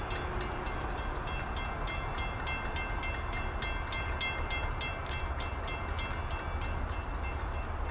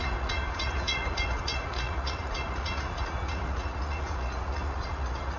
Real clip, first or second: first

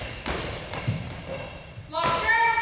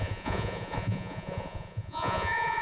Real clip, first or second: first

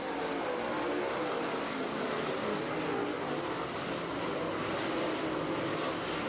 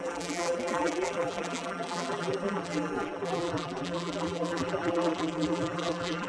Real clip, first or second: first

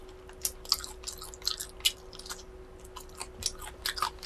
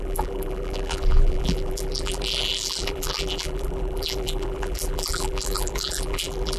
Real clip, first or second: first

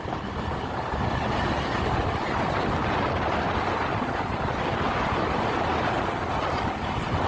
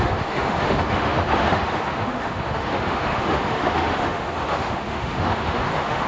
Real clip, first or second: first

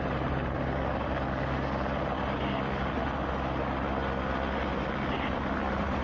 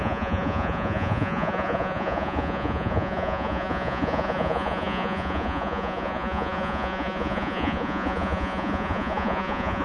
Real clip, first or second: first